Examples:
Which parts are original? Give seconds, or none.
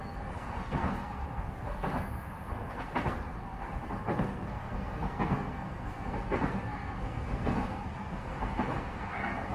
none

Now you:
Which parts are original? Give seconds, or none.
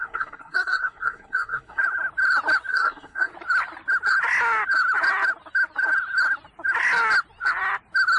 1.8-2.7; 3.3-8.2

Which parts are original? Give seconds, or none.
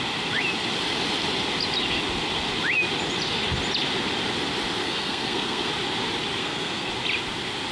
0.0-4.8; 5.7-6.4; 6.9-7.7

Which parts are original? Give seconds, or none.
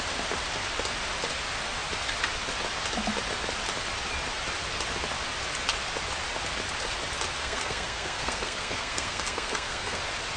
0.0-7.4; 10.0-10.4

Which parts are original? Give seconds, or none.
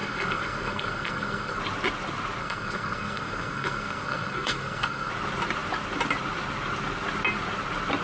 1.6-2.4; 5.1-8.0